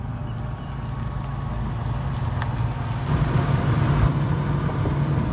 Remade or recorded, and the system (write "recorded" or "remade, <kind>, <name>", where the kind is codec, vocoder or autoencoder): recorded